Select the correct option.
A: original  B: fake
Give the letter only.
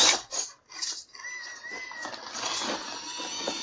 A